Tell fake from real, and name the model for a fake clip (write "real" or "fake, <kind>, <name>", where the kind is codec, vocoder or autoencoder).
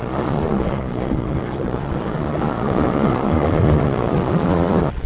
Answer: fake, vocoder, Vocos